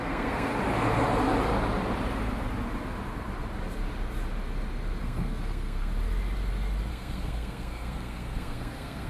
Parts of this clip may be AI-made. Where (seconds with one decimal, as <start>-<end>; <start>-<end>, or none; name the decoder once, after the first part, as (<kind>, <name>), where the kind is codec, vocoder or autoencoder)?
0.0-0.5 (codec, SNAC); 5.0-5.9; 6.9-9.1